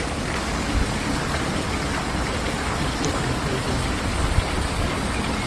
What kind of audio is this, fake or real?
real